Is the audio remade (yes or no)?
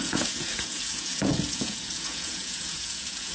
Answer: yes